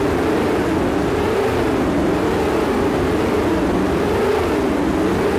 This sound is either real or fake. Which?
real